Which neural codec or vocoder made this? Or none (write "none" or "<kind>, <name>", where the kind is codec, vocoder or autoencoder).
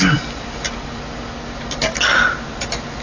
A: none